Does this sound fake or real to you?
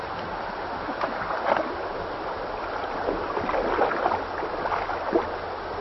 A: real